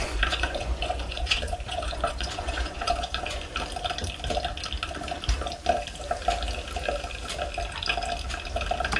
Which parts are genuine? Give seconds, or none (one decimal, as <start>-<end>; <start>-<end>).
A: 3.5-9.0